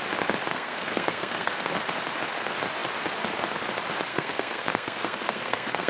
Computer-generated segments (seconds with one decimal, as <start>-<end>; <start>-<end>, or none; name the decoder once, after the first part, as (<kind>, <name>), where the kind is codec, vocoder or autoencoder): 0.5-1.7 (codec, SNAC); 4.1-5.9